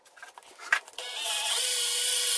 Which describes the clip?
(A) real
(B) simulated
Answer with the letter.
A